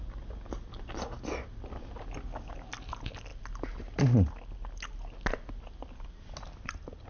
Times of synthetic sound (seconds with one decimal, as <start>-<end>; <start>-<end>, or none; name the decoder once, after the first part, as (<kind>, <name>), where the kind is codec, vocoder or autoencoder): none